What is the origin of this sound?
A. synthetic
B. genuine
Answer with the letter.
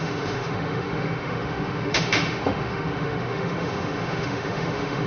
A